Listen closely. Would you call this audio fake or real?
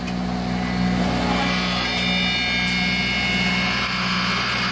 real